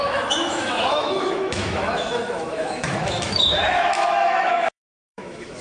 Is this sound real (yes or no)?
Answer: no